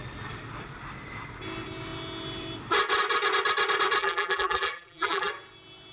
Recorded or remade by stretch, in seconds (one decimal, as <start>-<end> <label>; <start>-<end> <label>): 0.0-4.0 recorded; 4.0-5.3 remade; 5.3-5.9 recorded